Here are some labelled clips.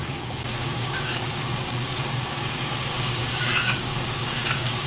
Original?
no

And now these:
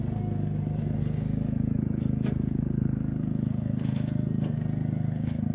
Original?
no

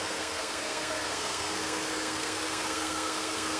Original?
no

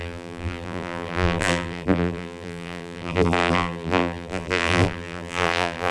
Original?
no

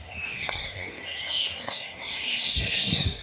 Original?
no